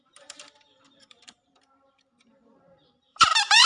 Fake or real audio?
fake